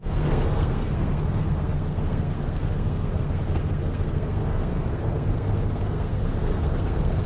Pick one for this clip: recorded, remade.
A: remade